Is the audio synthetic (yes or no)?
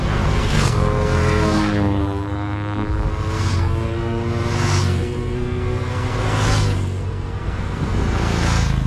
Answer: yes